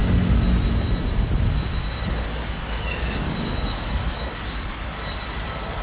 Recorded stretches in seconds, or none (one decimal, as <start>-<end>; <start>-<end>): 0.0-2.0